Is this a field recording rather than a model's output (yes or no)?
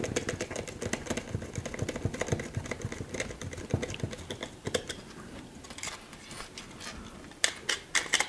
yes